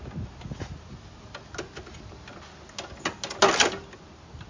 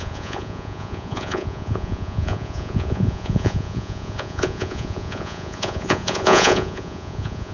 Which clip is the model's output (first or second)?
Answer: second